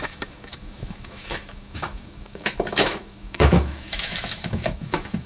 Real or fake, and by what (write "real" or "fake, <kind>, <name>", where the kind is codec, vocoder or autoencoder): fake, autoencoder, DAC-VAE